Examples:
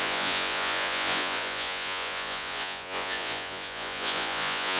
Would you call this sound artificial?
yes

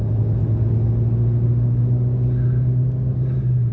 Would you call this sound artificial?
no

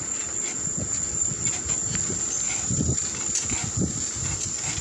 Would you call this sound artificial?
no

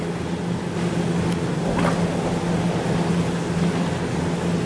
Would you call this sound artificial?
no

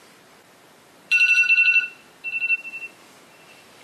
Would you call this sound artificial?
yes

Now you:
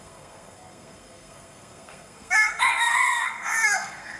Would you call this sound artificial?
yes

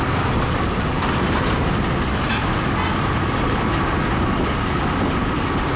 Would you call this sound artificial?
no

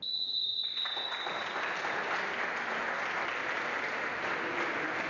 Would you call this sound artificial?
no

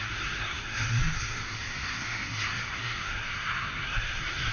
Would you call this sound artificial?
yes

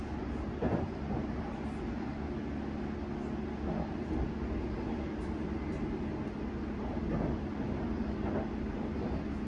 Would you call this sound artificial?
no